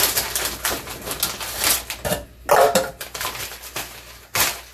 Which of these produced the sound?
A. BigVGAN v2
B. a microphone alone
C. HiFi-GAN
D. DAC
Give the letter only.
B